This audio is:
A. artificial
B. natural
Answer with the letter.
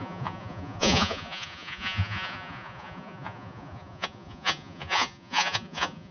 A